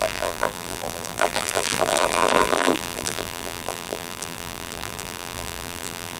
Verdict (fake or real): fake